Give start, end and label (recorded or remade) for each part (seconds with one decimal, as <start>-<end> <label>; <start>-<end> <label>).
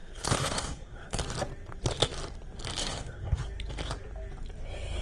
0.0-1.2 remade; 1.2-2.8 recorded; 2.8-3.4 remade; 3.4-5.0 recorded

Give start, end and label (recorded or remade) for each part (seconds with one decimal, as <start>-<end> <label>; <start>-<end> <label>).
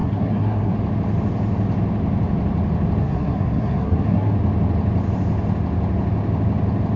0.0-0.7 remade; 0.7-3.0 recorded; 3.0-4.3 remade; 4.3-7.0 recorded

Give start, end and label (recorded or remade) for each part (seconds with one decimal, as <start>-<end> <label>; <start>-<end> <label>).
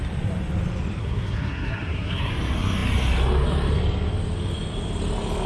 0.0-1.0 recorded; 1.0-2.3 remade; 2.3-5.5 recorded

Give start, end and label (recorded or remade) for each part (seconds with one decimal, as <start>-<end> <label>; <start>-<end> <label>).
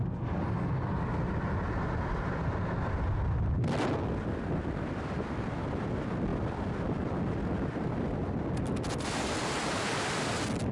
0.0-10.7 recorded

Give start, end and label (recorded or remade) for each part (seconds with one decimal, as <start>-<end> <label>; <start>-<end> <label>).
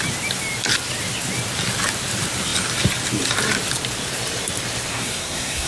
0.0-4.9 recorded; 4.9-5.7 remade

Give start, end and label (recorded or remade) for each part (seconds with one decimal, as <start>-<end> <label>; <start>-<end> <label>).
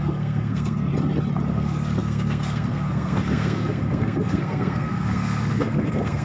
0.0-0.9 remade; 0.9-1.5 recorded; 1.5-6.2 remade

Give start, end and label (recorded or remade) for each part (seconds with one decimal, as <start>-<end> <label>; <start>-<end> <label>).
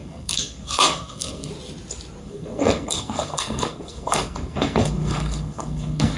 0.0-1.5 remade; 1.5-2.2 recorded; 2.2-6.2 remade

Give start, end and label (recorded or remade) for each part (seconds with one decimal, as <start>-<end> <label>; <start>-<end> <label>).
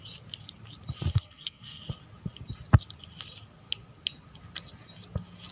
0.0-1.1 recorded; 1.1-1.8 remade; 1.8-5.5 recorded